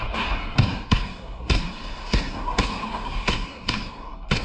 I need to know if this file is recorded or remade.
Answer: remade